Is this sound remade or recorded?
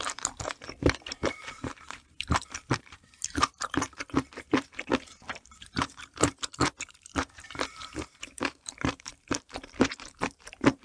remade